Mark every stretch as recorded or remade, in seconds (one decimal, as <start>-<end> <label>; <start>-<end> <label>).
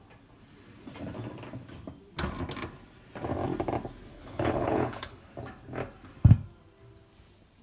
0.0-4.1 recorded; 4.1-5.2 remade; 5.2-7.6 recorded